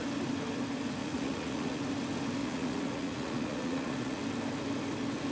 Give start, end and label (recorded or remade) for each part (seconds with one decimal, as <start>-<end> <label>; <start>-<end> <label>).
0.0-1.0 recorded; 1.0-1.8 remade; 1.8-2.4 recorded; 2.4-4.2 remade; 4.2-5.3 recorded